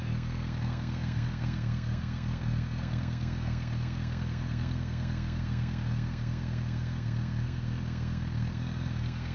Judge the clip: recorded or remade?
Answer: remade